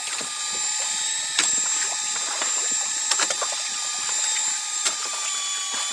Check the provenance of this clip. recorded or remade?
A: recorded